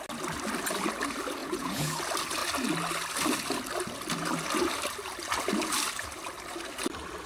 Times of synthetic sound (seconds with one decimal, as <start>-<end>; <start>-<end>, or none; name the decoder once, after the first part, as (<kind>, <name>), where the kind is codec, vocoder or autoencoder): 1.4-2.0 (vocoder, Vocos)